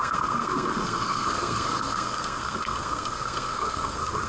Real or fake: fake